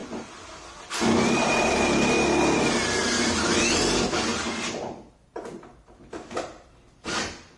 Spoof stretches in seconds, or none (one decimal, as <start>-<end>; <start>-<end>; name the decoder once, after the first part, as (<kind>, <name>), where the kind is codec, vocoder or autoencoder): none